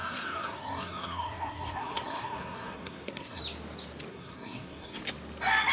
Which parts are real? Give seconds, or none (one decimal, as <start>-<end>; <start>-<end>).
3.4-4.1; 5.0-5.7